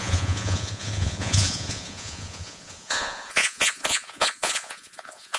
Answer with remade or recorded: remade